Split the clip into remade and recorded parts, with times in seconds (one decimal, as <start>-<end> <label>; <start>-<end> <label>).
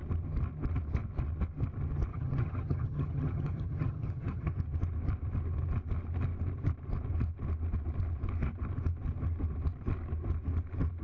0.0-2.1 recorded; 2.1-4.5 remade; 4.5-11.0 recorded